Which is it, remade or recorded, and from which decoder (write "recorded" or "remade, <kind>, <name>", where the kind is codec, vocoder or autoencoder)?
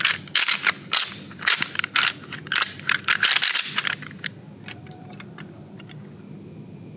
recorded